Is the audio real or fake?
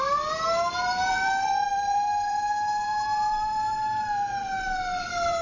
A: fake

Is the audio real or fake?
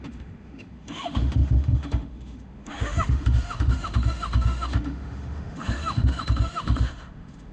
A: fake